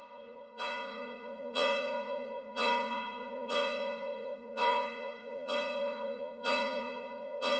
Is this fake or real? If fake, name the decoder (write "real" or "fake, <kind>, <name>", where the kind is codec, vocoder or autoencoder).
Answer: fake, vocoder, Vocos